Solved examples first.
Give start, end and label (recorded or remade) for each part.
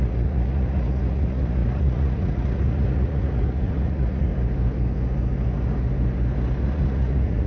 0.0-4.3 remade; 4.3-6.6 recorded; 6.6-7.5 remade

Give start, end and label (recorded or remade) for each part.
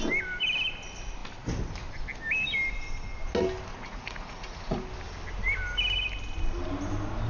0.0-3.7 recorded; 3.7-4.9 remade; 4.9-7.3 recorded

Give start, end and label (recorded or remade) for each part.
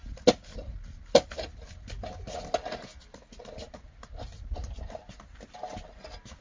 0.0-6.4 recorded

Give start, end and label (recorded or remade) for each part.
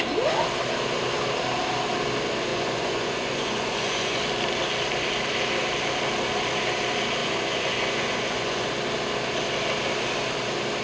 0.0-2.5 recorded; 2.5-4.2 remade; 4.2-7.2 recorded; 7.2-8.7 remade; 8.7-10.8 recorded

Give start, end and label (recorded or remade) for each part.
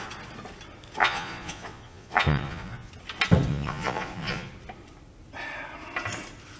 0.0-1.0 recorded; 1.0-2.9 remade; 2.9-3.5 recorded; 3.5-4.5 remade; 4.5-6.6 recorded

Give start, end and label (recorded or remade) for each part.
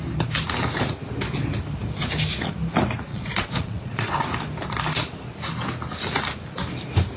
0.0-3.1 recorded; 3.1-4.1 remade; 4.1-7.2 recorded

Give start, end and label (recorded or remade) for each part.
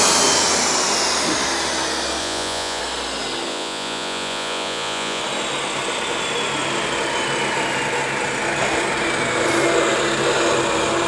0.0-2.2 recorded; 2.2-2.8 remade; 2.8-3.5 recorded; 3.5-5.2 remade; 5.2-11.1 recorded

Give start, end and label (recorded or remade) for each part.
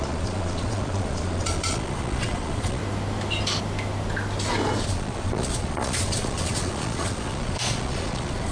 0.0-2.8 remade; 2.8-4.8 recorded; 4.8-8.5 remade